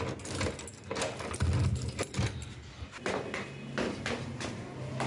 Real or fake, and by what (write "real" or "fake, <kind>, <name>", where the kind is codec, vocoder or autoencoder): real